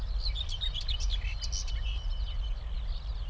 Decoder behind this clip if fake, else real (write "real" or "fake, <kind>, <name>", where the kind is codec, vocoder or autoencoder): real